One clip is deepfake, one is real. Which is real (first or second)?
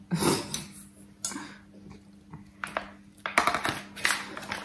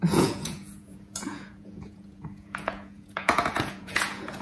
first